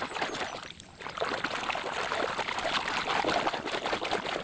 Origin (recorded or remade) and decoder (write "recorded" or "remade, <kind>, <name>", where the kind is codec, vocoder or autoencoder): recorded